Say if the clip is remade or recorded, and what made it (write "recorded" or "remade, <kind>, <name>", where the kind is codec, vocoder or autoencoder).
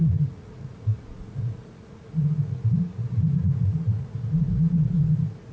remade, vocoder, Vocos